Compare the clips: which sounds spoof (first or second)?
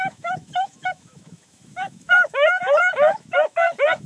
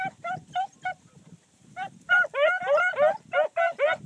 first